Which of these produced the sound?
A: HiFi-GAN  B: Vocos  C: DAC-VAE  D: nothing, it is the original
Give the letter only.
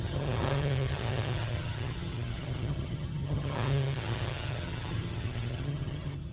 A